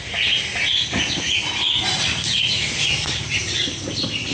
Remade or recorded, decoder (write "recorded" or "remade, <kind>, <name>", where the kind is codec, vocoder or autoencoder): recorded